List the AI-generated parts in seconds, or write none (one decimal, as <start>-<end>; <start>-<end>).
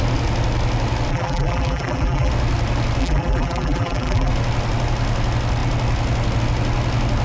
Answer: 1.1-2.3; 3.0-4.3